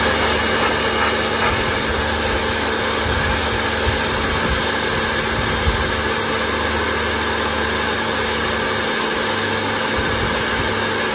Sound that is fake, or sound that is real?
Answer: real